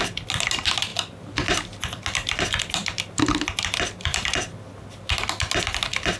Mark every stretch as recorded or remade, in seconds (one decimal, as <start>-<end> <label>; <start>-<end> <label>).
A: 0.0-6.2 recorded